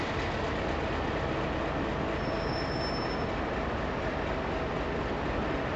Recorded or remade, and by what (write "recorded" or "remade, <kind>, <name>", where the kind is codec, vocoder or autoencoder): recorded